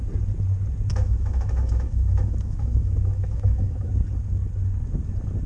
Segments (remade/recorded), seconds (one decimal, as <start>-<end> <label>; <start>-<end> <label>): 0.0-0.9 recorded; 0.9-3.9 remade; 3.9-5.5 recorded